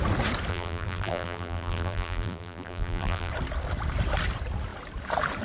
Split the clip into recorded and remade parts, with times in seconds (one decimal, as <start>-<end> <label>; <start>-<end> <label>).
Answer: 0.0-0.5 recorded; 0.5-3.3 remade; 3.3-5.4 recorded

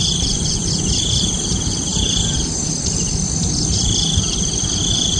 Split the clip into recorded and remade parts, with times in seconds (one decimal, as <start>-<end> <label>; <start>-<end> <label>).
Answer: 0.0-1.9 recorded; 1.9-5.2 remade

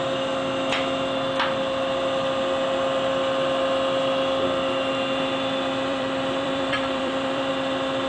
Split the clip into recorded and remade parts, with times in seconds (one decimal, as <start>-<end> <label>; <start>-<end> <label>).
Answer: 0.0-5.9 recorded; 5.9-7.5 remade; 7.5-8.1 recorded

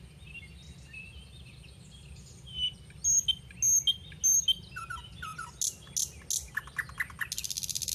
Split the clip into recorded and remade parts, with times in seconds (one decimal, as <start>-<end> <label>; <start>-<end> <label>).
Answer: 0.0-7.9 recorded

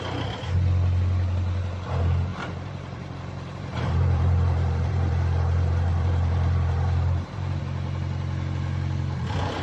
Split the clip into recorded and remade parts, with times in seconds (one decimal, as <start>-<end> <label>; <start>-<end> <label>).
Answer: 0.0-2.3 recorded; 2.3-7.6 remade; 7.6-9.6 recorded

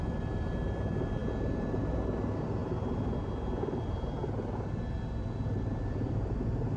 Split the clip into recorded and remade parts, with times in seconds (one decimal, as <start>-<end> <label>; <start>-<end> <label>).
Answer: 0.0-6.8 recorded

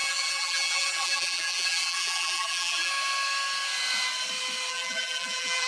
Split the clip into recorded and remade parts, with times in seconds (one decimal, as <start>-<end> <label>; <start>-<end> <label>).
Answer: 0.0-2.9 remade; 2.9-4.7 recorded; 4.7-5.7 remade

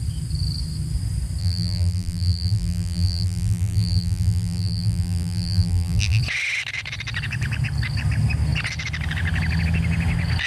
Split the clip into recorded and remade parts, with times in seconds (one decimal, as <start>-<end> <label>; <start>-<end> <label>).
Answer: 0.0-1.4 recorded; 1.4-6.2 remade; 6.2-10.5 recorded